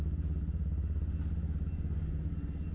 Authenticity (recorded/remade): recorded